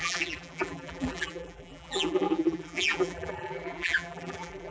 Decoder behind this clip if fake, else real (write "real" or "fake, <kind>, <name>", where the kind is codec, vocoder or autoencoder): fake, vocoder, BigVGAN v2